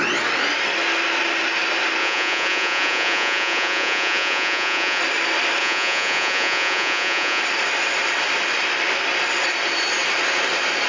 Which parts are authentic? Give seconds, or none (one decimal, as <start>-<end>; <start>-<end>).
0.0-2.0; 5.0-5.6; 7.4-10.9